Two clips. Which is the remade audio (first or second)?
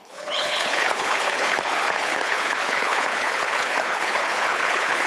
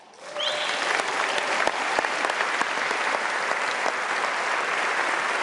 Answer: first